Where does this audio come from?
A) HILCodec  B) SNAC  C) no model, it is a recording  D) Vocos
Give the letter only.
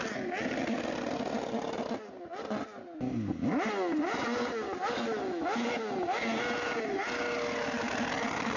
C